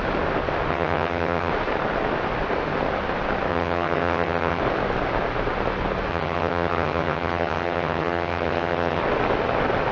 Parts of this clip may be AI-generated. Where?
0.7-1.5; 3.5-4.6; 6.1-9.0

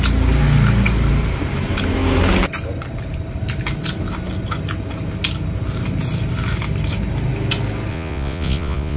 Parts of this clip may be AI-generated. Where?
7.9-9.0

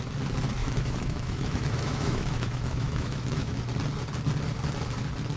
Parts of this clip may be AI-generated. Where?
0.6-3.6